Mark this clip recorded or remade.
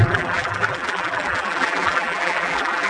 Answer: remade